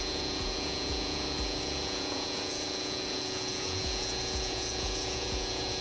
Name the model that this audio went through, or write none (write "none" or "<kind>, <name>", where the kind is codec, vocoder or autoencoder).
vocoder, Vocos